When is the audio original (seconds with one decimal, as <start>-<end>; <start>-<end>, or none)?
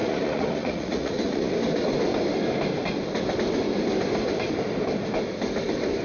1.5-6.0